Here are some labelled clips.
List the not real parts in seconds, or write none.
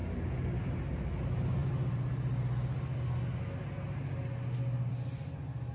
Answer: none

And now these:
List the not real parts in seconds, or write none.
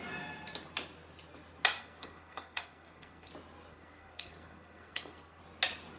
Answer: 1.8-3.3; 3.7-5.4